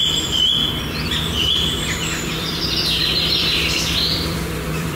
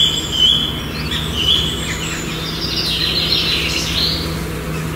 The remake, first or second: first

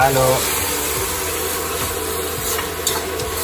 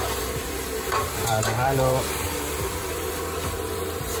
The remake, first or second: second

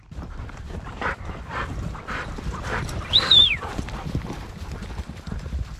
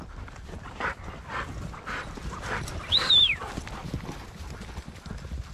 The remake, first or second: first